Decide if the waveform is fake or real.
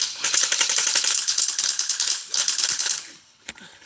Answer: fake